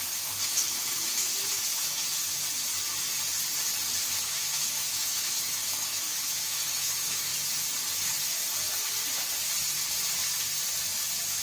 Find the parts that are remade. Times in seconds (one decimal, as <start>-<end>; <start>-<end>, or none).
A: 0.0-2.7; 4.2-7.3